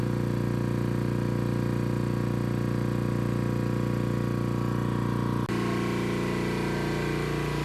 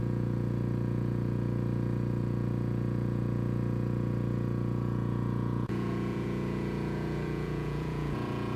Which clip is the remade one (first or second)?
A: second